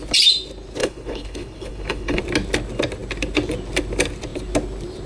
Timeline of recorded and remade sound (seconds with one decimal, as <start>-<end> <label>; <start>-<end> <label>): 0.0-0.8 recorded; 0.8-2.2 remade; 2.2-5.1 recorded